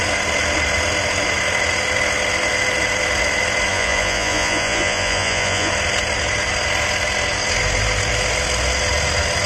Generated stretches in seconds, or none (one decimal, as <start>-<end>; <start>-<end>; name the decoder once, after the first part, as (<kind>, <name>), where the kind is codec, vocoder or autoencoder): 3.7-5.7 (vocoder, Vocos)